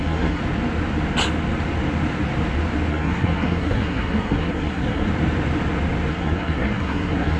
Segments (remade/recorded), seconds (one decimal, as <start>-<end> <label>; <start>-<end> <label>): 0.0-0.4 remade; 0.4-2.9 recorded; 2.9-5.1 remade; 5.1-6.1 recorded; 6.1-7.4 remade